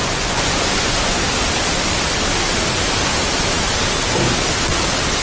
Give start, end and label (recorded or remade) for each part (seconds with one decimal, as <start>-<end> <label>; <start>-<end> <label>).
0.0-1.2 remade; 1.2-5.2 recorded